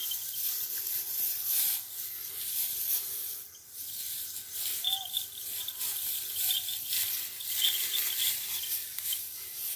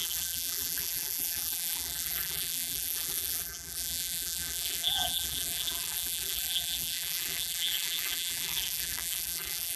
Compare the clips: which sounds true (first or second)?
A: first